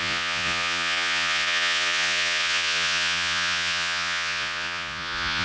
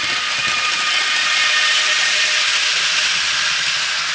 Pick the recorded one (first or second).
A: second